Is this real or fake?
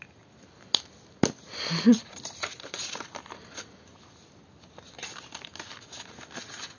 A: real